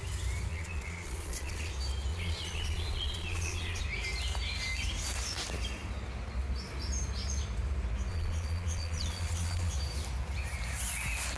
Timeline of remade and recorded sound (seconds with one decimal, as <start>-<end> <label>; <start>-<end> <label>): 0.0-0.5 recorded; 0.5-1.7 remade; 1.7-2.1 recorded; 2.1-3.8 remade; 3.8-8.1 recorded; 8.1-9.7 remade; 9.7-11.4 recorded